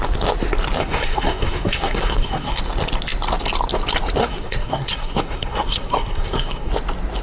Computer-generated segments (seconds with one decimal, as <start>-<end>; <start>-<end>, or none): 0.8-2.6; 4.2-6.7